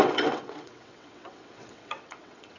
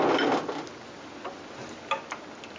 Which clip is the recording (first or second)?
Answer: second